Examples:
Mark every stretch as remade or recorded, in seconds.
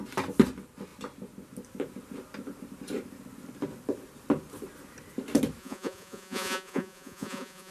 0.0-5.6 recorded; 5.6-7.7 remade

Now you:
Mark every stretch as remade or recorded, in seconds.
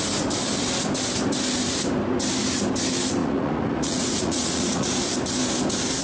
0.0-3.2 recorded; 3.2-4.9 remade; 4.9-6.0 recorded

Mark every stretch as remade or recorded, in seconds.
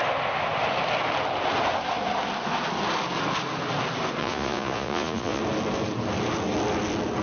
0.0-4.2 recorded; 4.2-5.4 remade; 5.4-7.2 recorded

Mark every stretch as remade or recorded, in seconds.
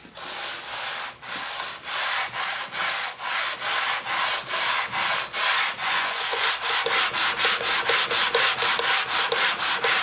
0.0-5.8 recorded; 5.8-6.5 remade; 6.5-10.0 recorded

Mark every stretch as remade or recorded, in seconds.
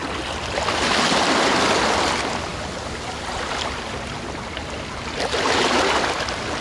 0.0-6.6 recorded